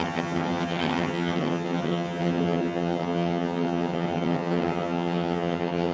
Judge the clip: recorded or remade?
remade